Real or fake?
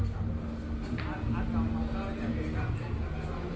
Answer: real